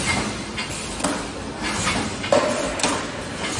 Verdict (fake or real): real